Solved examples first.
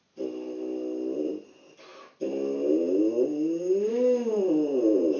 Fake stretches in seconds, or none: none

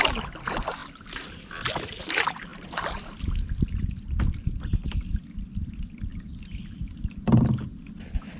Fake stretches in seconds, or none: 0.0-0.8 (vocoder, BigVGAN v2); 1.5-8.4